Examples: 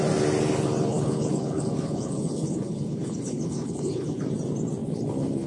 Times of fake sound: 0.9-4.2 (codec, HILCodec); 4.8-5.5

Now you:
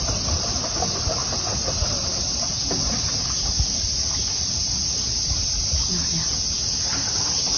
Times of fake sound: none

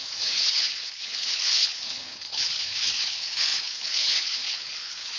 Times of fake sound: 0.0-5.2 (codec, HILCodec)

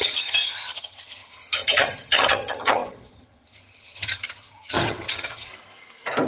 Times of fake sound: 0.0-5.5 (vocoder, HiFi-GAN)

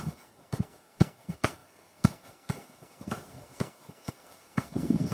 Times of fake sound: 0.0-5.1 (codec, SNAC)

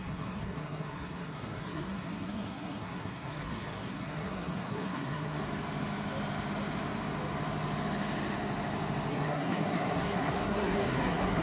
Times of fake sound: 0.0-5.4 (codec, SNAC); 9.1-11.4